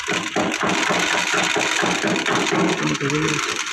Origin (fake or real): real